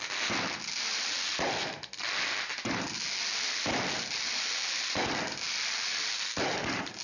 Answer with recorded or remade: recorded